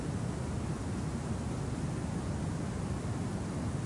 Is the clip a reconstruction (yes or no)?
no